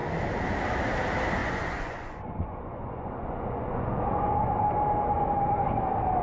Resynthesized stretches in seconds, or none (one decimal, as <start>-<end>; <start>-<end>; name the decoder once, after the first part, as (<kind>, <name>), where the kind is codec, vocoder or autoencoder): 1.4-4.5 (vocoder, Vocos)